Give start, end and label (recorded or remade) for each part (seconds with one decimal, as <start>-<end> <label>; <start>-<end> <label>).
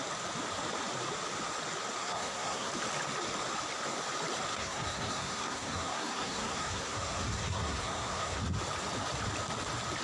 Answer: 0.0-2.0 recorded; 2.0-2.7 remade; 2.7-4.5 recorded; 4.5-8.4 remade; 8.4-10.0 recorded